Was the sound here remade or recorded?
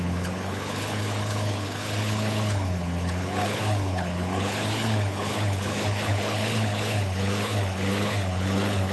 remade